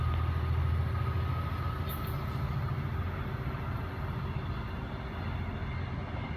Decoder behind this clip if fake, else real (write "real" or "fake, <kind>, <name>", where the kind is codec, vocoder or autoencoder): real